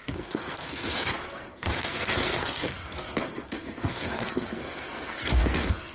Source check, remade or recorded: remade